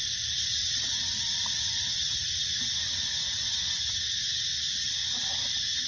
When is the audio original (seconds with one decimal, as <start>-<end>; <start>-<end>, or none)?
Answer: 0.0-0.6; 4.1-5.0